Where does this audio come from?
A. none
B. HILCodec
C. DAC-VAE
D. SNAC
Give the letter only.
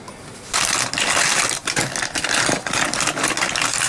A